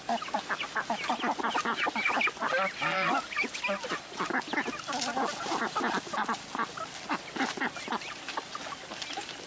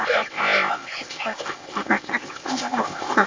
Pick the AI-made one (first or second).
second